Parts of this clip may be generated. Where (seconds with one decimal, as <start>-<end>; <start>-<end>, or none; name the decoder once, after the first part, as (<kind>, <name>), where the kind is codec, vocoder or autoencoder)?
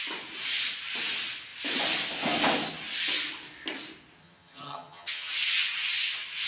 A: 4.2-5.3 (vocoder, HiFi-GAN)